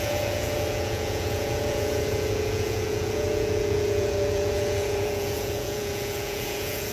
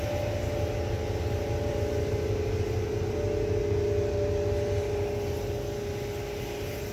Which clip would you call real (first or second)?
second